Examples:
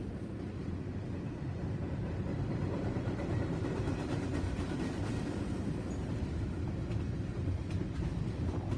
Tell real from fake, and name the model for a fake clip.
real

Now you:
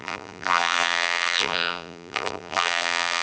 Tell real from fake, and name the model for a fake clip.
fake, vocoder, BigVGAN v2